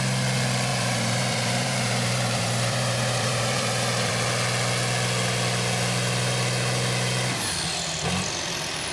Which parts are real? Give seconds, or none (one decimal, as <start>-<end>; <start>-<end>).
0.0-0.7; 4.1-8.9